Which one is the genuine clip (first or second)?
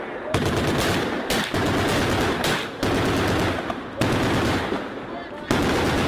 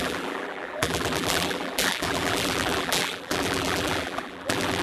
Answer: first